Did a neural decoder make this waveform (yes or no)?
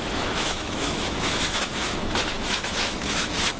yes